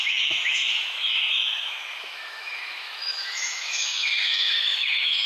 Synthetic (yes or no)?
yes